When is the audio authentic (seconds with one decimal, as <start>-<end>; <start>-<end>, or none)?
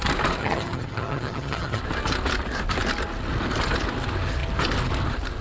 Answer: 0.0-0.4; 1.8-5.4